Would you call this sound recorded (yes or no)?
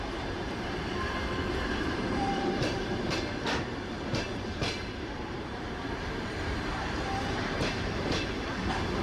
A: no